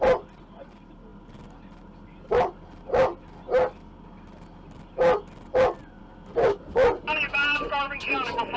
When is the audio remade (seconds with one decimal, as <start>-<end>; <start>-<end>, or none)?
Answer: none